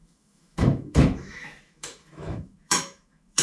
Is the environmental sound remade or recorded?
remade